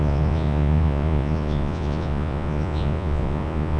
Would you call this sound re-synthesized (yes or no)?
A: yes